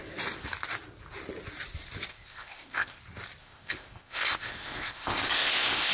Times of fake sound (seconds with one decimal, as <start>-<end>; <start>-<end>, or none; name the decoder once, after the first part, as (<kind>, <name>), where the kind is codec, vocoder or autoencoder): 2.1-3.0 (codec, ZipCodec); 3.4-5.9